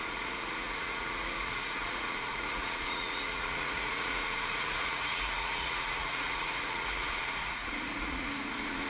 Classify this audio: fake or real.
fake